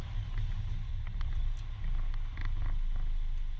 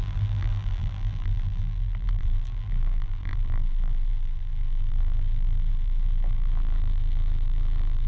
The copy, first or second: second